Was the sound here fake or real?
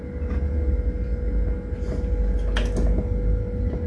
real